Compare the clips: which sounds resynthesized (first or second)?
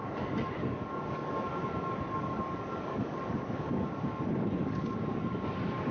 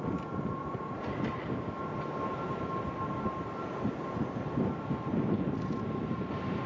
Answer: first